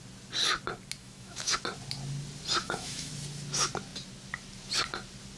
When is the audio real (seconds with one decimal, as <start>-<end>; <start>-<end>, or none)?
0.0-1.0; 1.6-2.6; 3.1-5.4